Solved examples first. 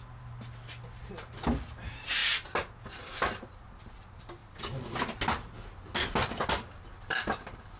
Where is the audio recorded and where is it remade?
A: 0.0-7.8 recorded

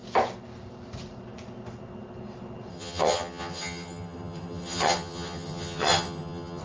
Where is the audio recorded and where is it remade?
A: 0.0-2.7 recorded; 2.7-6.6 remade

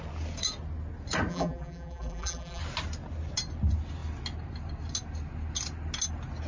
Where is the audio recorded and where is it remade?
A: 0.0-1.3 recorded; 1.3-2.6 remade; 2.6-6.5 recorded

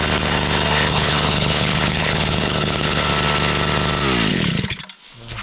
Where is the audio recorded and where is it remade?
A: 0.0-0.9 recorded; 0.9-3.1 remade; 3.1-4.3 recorded; 4.3-4.8 remade; 4.8-5.4 recorded

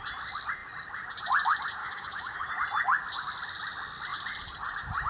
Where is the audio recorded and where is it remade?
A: 0.0-1.8 recorded; 1.8-2.5 remade; 2.5-5.1 recorded